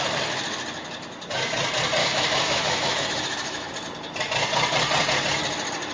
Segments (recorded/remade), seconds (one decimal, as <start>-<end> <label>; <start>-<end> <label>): 0.0-2.0 recorded; 2.0-3.7 remade; 3.7-5.9 recorded